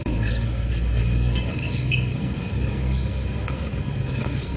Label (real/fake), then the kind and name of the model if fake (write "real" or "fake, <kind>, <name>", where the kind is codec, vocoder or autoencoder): fake, codec, SNAC